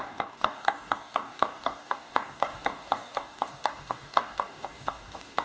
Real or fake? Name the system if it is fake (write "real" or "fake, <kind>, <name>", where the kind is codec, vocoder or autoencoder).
fake, codec, DAC